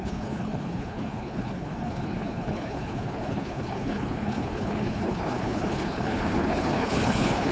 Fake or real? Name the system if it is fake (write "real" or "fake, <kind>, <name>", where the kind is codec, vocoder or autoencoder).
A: fake, codec, HILCodec